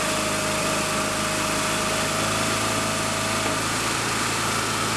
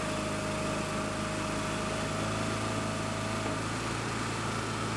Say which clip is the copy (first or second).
first